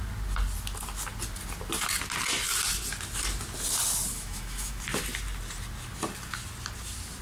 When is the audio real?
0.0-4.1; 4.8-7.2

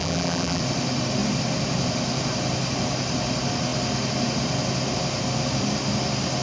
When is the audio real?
0.6-6.4

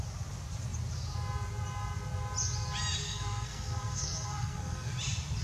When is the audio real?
0.0-3.0; 4.9-5.4

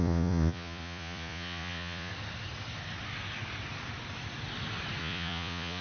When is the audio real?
2.1-5.0

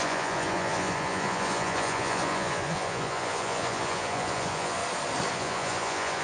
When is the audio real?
4.8-5.3

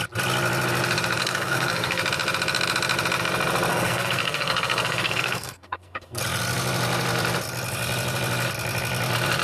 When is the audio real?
0.0-1.2; 2.0-3.7; 6.2-9.4